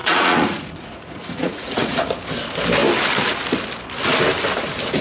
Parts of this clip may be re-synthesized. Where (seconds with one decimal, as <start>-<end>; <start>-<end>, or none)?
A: 0.0-2.0